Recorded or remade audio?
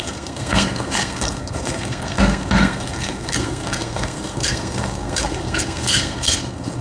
remade